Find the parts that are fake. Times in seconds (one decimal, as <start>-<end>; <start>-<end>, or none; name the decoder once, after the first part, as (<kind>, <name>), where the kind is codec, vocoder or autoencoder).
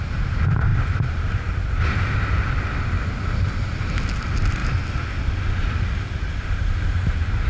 none